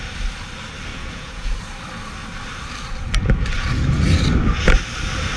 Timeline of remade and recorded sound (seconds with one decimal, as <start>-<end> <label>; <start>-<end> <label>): 0.0-0.9 recorded; 0.9-1.6 remade; 1.6-5.4 recorded